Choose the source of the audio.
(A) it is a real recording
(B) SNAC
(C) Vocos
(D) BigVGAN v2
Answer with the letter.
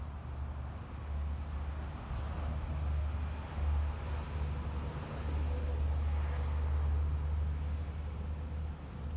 A